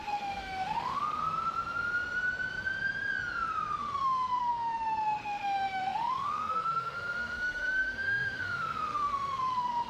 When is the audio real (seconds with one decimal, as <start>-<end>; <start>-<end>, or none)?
1.2-3.8